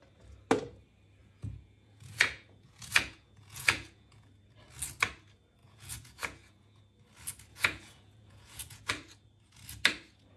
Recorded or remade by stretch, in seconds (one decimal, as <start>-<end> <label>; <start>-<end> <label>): 0.0-1.2 recorded; 1.2-4.3 remade; 4.3-5.6 recorded; 5.6-6.8 remade; 6.8-7.5 recorded; 7.5-8.9 remade; 8.9-10.4 recorded